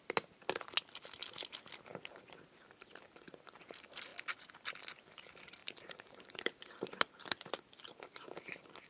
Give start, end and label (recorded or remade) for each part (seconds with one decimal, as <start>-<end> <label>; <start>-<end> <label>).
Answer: 0.0-5.6 recorded; 5.6-6.8 remade; 6.8-8.9 recorded